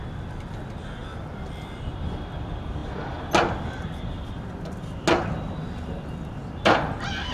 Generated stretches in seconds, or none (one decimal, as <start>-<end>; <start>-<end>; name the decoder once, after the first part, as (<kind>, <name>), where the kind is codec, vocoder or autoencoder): none